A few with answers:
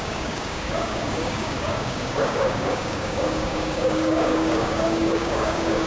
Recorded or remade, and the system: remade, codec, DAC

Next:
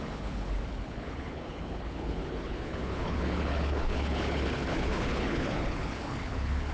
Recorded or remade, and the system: remade, codec, HILCodec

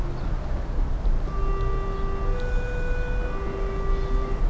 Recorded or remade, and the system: recorded